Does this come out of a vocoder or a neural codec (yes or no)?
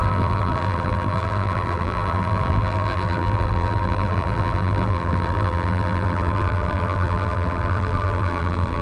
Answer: yes